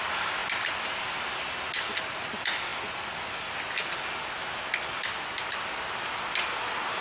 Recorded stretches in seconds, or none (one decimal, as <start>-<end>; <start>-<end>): 0.0-7.0